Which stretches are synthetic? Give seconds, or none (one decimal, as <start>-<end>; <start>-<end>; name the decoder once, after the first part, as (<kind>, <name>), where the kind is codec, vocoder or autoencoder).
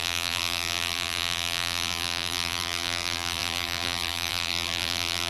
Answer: 0.0-5.3 (vocoder, BigVGAN v2)